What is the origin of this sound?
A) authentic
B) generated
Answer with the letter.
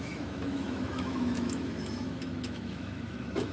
B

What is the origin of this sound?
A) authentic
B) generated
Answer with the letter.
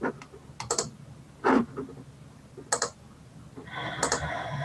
A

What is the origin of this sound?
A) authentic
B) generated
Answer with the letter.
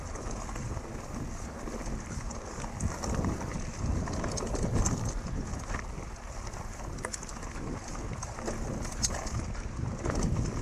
A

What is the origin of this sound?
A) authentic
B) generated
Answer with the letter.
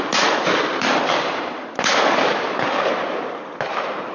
A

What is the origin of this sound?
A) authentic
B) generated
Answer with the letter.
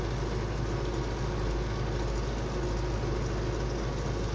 A